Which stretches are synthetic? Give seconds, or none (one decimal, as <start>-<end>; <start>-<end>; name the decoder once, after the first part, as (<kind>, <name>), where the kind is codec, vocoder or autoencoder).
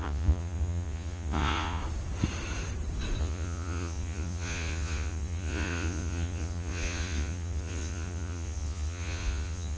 0.0-1.8 (vocoder, Vocos); 3.2-9.8